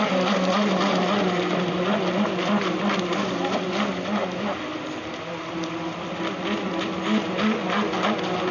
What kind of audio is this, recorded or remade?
recorded